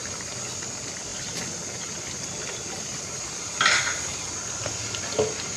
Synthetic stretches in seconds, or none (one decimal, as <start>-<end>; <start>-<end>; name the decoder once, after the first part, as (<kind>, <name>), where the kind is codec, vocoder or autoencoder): none